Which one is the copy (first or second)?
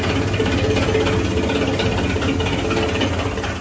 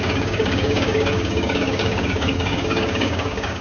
second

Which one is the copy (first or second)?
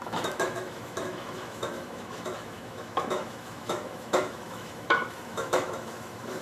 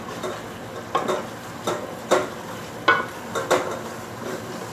first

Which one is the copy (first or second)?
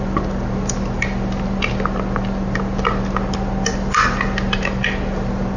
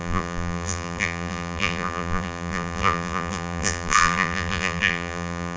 second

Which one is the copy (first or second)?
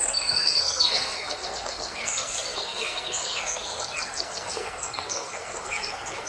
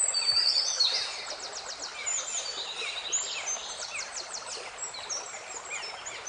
first